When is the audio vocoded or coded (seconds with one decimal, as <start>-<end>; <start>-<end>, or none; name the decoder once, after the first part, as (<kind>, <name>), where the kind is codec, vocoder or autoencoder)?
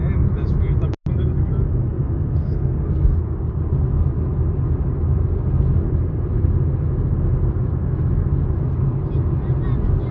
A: 1.8-3.2 (codec, SNAC)